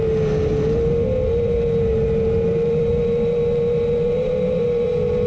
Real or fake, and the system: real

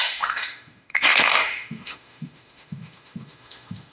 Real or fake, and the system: fake, autoencoder, DAC-VAE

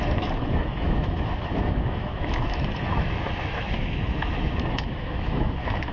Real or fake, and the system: fake, autoencoder, DAC-VAE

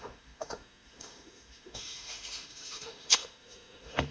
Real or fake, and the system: fake, autoencoder, DAC-VAE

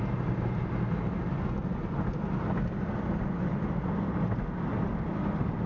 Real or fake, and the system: real